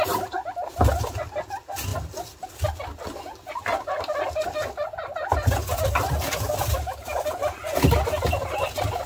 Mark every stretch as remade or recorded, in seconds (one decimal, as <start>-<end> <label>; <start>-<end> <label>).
0.0-9.1 recorded